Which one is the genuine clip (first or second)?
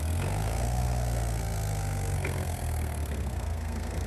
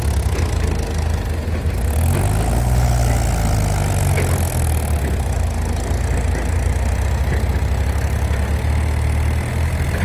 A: second